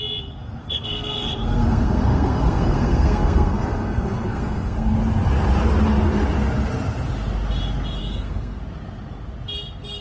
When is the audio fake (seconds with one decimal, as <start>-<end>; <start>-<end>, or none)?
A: 0.6-4.9; 8.0-8.6